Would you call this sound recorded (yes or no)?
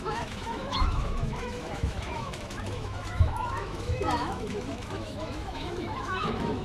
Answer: no